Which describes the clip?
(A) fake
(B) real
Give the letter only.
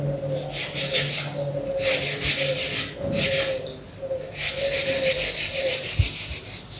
B